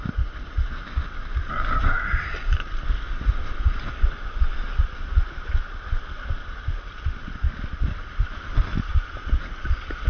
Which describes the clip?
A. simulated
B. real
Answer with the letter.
B